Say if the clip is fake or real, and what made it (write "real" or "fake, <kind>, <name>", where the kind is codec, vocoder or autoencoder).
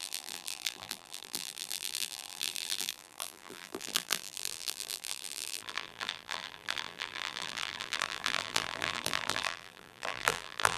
fake, vocoder, BigVGAN v2